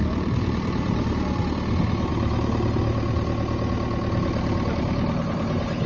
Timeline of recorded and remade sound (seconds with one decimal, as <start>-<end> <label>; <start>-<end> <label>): 0.0-1.4 remade; 1.4-5.9 recorded